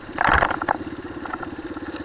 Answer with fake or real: fake